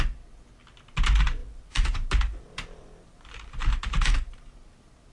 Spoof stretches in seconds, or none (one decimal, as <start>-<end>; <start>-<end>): 1.4-4.5